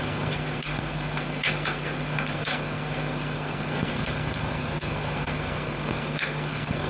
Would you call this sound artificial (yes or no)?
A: yes